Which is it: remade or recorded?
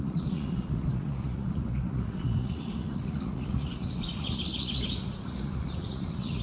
remade